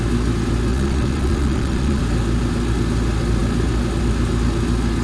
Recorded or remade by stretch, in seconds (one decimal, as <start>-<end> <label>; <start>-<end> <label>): 0.0-0.7 recorded; 0.7-2.0 remade; 2.0-5.0 recorded